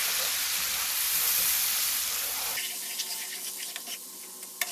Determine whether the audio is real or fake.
real